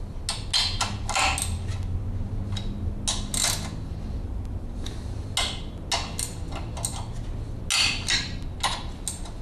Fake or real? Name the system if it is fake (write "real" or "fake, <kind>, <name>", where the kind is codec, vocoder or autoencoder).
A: real